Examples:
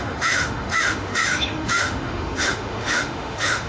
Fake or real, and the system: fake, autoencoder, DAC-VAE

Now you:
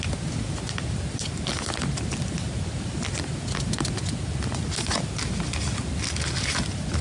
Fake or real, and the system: real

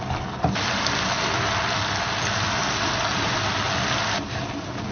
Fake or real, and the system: real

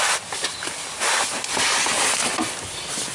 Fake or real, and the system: real